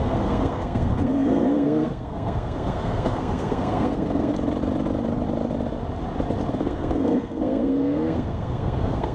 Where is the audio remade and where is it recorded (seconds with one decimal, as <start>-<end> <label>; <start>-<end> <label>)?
0.0-4.3 remade; 4.3-6.5 recorded; 6.5-9.1 remade